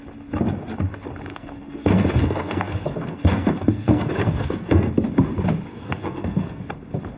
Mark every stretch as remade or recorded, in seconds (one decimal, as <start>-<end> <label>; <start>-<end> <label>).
0.0-1.3 recorded; 1.3-4.9 remade; 4.9-5.7 recorded; 5.7-6.6 remade; 6.6-7.2 recorded